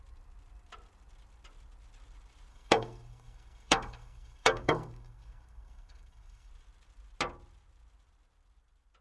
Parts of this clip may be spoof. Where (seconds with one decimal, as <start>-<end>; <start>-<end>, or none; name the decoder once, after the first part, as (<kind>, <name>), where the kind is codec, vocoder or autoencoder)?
2.5-6.5 (codec, SNAC)